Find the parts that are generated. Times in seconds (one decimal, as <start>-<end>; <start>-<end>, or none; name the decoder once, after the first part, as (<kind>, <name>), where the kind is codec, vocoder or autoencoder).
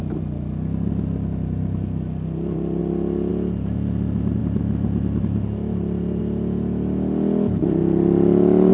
4.4-6.2 (vocoder, BigVGAN v2); 7.8-8.7